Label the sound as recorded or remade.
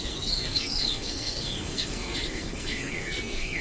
remade